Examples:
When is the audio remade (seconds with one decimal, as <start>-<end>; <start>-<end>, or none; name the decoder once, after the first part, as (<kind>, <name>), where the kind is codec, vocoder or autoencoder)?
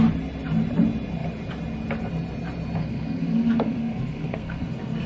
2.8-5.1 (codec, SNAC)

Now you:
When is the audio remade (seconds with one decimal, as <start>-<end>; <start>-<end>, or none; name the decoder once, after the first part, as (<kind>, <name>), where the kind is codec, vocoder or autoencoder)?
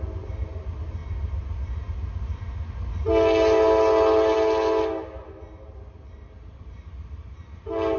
none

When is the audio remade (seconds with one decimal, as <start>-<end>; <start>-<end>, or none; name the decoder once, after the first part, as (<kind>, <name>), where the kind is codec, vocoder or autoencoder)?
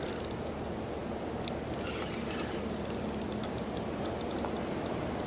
none